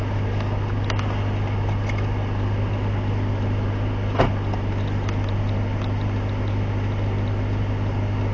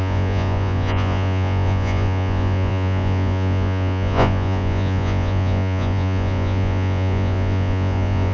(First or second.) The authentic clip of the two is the first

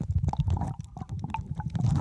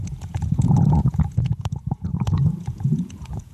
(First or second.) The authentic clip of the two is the first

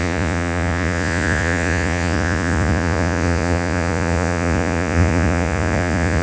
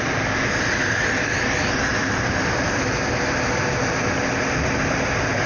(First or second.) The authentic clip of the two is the second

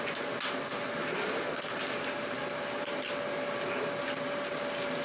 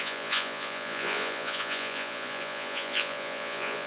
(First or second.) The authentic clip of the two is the first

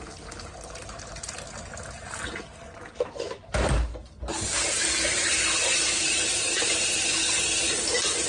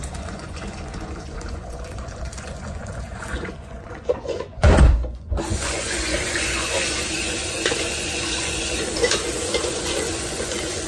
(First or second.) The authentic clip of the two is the first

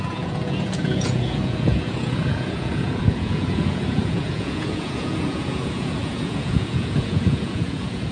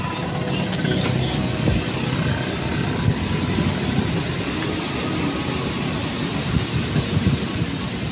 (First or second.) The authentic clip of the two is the second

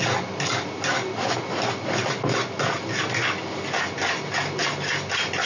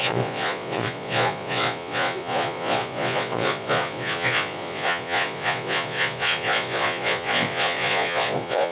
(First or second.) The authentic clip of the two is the first